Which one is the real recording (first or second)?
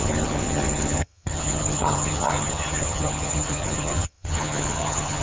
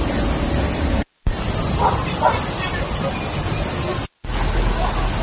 second